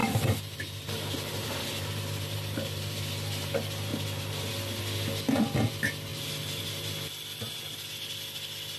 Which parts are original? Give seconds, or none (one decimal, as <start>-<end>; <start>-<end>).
3.5-3.9; 4.5-6.1; 7.1-8.8